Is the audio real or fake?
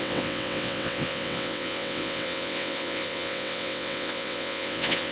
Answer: fake